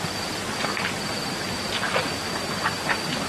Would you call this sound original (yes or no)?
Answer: yes